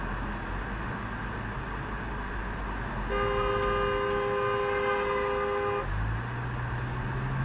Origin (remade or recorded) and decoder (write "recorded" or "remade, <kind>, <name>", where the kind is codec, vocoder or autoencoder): recorded